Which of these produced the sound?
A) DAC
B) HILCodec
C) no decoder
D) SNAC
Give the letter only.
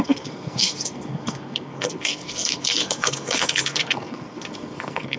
D